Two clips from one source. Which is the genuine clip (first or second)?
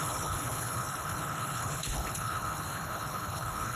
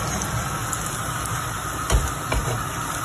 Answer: second